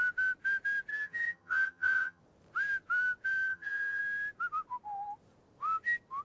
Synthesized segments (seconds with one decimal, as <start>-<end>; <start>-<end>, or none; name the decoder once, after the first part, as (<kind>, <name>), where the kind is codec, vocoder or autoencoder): 0.9-2.2 (vocoder, HiFi-GAN); 3.5-4.0

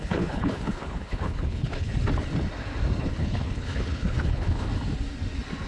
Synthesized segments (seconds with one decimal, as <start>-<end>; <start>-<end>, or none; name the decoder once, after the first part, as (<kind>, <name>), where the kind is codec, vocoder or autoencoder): 0.0-1.9 (codec, HILCodec); 3.0-4.7

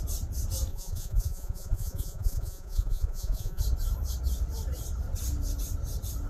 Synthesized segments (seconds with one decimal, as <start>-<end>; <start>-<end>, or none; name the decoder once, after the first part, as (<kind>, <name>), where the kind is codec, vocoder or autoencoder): 0.7-3.6 (vocoder, Vocos)

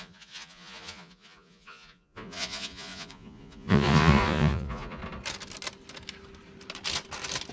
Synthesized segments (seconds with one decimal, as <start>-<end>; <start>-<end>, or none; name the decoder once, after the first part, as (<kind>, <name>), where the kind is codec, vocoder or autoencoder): 0.0-5.0 (vocoder, Vocos)

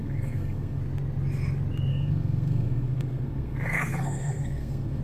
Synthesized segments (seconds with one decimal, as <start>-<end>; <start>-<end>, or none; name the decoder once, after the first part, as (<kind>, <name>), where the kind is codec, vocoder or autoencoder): 0.0-0.8 (codec, SNAC); 1.9-5.0

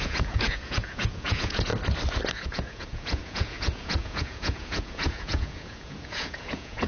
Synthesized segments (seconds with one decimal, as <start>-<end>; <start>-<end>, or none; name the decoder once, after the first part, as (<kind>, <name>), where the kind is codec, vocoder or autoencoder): 0.0-1.7 (vocoder, Vocos); 2.3-6.9

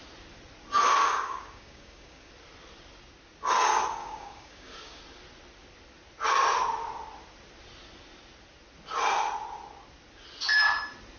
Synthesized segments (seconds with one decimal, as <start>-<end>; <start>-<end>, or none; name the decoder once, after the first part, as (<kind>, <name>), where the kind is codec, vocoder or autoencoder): 1.0-2.3 (codec, DAC); 4.0-5.0

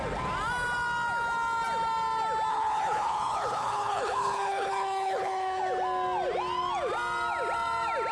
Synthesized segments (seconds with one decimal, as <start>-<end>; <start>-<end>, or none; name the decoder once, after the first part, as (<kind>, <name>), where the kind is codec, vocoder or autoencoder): 2.5-5.6 (codec, HILCodec)